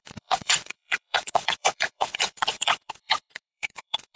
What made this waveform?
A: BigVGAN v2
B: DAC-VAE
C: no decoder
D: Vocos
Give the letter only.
D